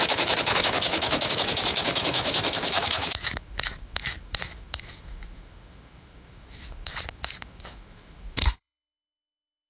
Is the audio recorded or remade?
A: remade